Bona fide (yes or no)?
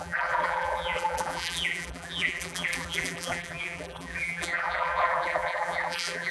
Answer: no